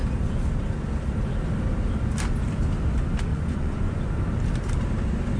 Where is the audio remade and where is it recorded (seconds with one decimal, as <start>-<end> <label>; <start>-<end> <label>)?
0.0-3.3 recorded; 3.3-4.0 remade; 4.0-5.4 recorded

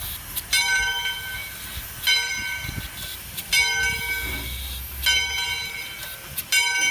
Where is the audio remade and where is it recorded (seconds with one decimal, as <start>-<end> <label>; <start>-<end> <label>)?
0.0-6.9 recorded